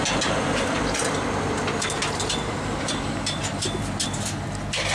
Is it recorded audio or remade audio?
remade